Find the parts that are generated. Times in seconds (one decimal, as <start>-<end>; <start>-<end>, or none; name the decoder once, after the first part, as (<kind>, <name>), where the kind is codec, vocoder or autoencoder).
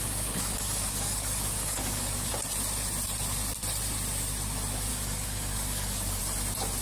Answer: 0.0-2.3 (codec, DAC); 4.9-6.2